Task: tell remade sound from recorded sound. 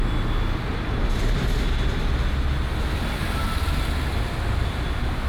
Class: recorded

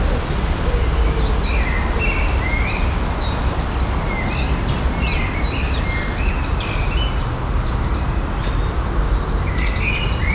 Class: recorded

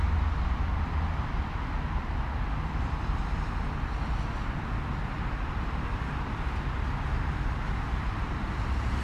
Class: recorded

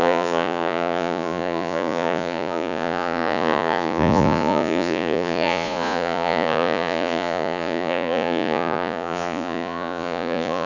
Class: remade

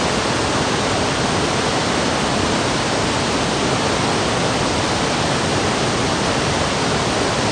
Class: recorded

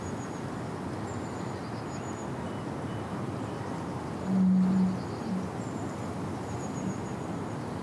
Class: recorded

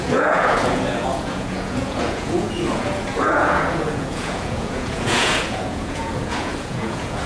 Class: remade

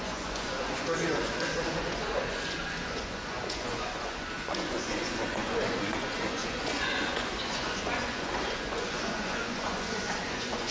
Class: remade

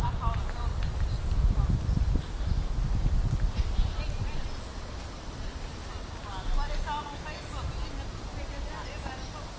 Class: recorded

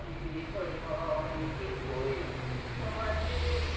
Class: recorded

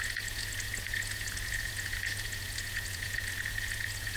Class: remade